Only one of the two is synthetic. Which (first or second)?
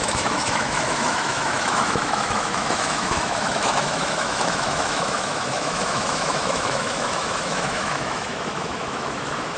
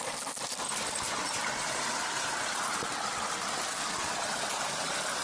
first